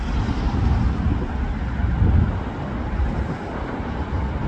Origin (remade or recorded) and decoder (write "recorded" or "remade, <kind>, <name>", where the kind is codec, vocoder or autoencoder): recorded